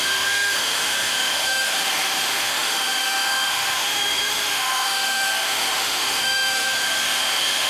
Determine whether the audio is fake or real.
fake